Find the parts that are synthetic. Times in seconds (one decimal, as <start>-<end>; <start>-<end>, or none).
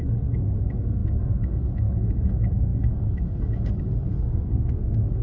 0.0-5.2